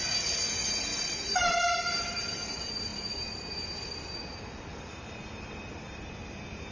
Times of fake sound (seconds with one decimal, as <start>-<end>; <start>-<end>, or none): 0.9-1.8; 4.7-5.3